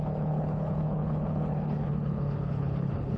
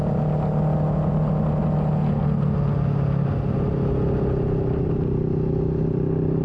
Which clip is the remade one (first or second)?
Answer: first